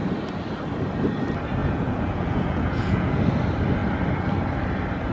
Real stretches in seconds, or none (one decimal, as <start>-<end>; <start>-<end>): 0.0-1.6; 3.2-5.1